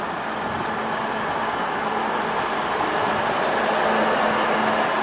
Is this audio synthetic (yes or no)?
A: no